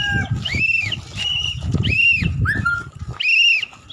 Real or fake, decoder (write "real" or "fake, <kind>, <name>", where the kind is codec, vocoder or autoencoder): real